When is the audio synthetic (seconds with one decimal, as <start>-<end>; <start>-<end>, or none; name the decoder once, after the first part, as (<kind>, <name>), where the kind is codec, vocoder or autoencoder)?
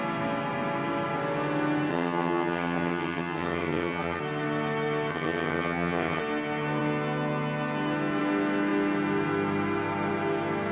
1.9-4.2 (vocoder, HiFi-GAN); 5.1-6.2